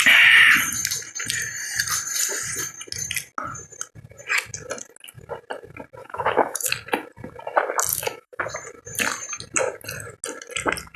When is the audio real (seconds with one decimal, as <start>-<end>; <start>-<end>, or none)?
0.0-6.0; 6.7-7.9; 8.5-11.0